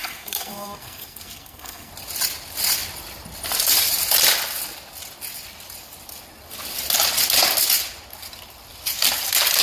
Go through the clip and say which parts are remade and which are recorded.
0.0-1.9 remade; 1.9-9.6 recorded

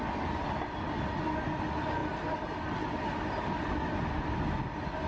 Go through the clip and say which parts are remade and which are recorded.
0.0-5.1 recorded